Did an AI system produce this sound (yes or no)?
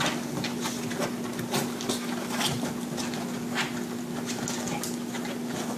no